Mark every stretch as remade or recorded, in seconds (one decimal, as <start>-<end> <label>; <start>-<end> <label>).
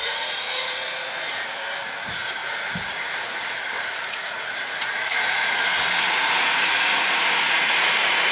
0.0-8.3 remade